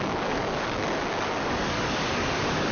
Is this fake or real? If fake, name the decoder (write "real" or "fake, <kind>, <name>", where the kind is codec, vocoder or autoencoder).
fake, codec, DAC